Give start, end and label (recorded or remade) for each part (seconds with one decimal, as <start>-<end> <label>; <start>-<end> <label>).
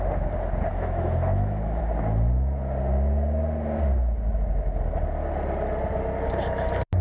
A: 0.0-0.7 recorded; 0.7-1.8 remade; 1.8-7.0 recorded